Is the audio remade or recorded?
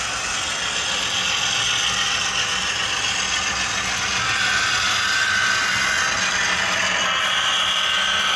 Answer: recorded